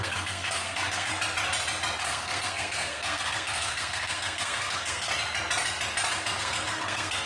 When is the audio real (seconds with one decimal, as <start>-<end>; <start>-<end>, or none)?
1.1-2.0; 5.1-6.4